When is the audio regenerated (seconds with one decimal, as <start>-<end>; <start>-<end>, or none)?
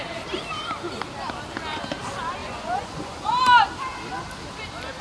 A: 2.4-3.3